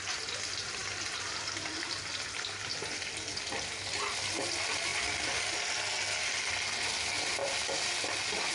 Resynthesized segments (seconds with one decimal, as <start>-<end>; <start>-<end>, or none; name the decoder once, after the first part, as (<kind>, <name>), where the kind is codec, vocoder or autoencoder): 0.8-4.4 (vocoder, BigVGAN v2); 7.4-8.5

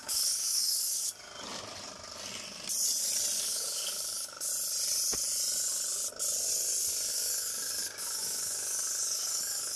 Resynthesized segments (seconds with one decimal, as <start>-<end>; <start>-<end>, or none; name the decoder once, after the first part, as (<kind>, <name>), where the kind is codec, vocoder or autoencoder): 0.0-1.3 (codec, DAC); 3.4-4.5; 7.1-9.8

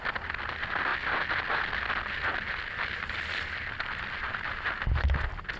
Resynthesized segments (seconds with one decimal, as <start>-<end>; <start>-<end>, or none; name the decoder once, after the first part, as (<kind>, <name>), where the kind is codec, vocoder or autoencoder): none

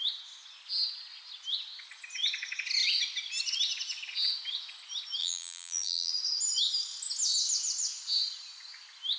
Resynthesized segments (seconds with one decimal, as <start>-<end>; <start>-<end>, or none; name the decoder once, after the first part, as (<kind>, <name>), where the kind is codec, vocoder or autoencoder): 5.2-6.1 (vocoder, BigVGAN v2)

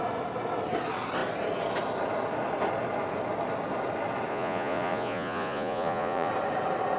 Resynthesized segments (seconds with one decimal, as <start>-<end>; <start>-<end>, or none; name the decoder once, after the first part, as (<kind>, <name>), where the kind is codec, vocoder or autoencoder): 4.3-6.3 (vocoder, Vocos)